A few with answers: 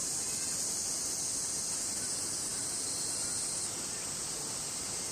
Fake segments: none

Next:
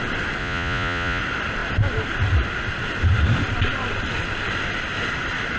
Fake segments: 0.4-1.2 (vocoder, Vocos)

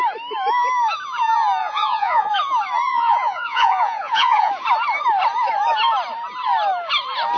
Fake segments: 1.6-2.3 (vocoder, Vocos); 2.9-4.5

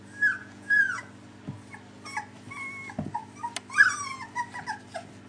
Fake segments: 0.4-1.0 (vocoder, Vocos)

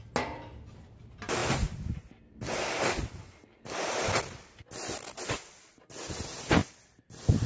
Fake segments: none